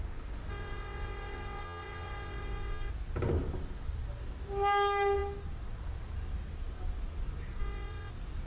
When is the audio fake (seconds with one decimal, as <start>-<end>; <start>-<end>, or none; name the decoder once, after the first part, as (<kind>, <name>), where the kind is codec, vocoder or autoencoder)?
0.5-2.9 (vocoder, WaveNeXt); 7.6-8.1